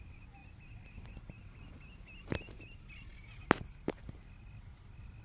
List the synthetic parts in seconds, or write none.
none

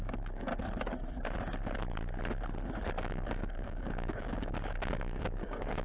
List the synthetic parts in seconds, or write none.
0.0-0.5 (codec, DAC); 3.0-5.8

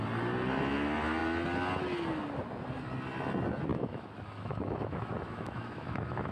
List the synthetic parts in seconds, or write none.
3.7-6.3 (autoencoder, DAC-VAE)

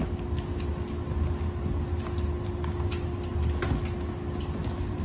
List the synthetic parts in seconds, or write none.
none